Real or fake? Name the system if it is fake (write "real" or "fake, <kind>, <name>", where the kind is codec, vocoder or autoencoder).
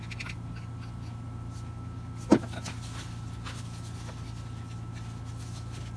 real